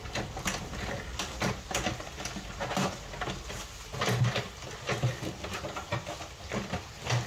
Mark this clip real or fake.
real